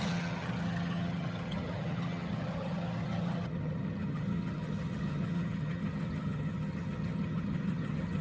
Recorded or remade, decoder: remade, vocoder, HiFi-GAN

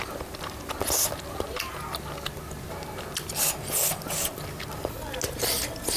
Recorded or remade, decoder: recorded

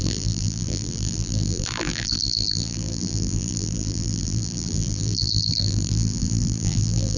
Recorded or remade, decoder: remade, vocoder, BigVGAN v2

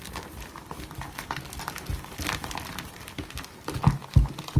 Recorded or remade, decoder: recorded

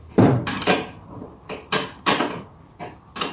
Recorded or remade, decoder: remade, vocoder, BigVGAN v2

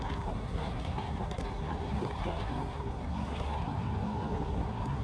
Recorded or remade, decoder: remade, codec, SNAC